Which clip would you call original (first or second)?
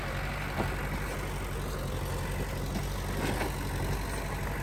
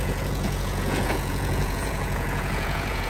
first